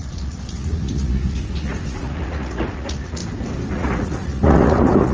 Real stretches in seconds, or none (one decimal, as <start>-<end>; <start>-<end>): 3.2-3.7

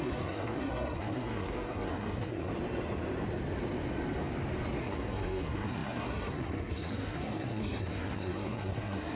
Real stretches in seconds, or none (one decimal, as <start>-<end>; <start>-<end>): 2.5-4.8

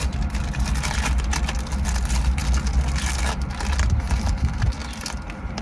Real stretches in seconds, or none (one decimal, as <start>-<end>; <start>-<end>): 0.0-5.6

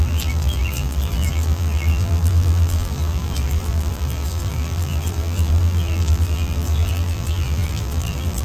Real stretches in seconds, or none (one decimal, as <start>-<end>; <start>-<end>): none

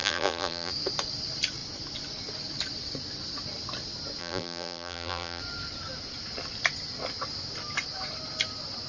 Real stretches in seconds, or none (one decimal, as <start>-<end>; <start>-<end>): 0.7-4.2; 5.4-8.9

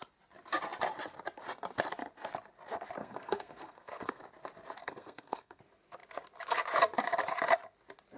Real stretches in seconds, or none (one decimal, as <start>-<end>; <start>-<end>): 0.0-3.0; 4.2-4.8; 5.6-8.2

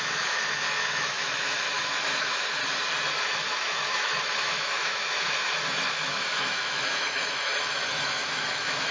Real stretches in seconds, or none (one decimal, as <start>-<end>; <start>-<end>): 2.6-3.2

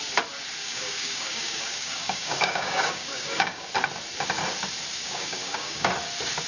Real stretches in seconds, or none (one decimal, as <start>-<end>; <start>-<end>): 0.0-0.6; 3.7-4.9; 5.9-6.5